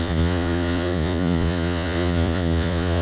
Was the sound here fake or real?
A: fake